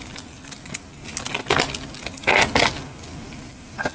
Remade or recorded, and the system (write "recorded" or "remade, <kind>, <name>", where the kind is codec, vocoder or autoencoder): recorded